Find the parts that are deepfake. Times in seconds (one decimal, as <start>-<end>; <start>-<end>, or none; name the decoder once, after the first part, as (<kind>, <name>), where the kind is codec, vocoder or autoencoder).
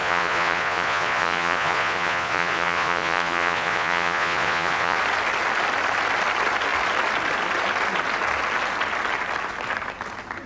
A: 0.0-5.0 (vocoder, Vocos)